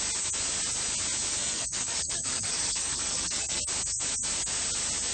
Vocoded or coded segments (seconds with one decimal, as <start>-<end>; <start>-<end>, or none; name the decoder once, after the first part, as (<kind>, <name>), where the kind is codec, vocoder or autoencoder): 1.3-3.6 (codec, SNAC)